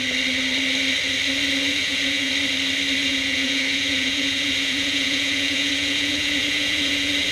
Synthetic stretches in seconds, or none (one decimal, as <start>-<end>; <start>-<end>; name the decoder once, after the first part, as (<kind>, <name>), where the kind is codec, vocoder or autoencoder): 1.7-2.3 (vocoder, Vocos); 3.0-7.3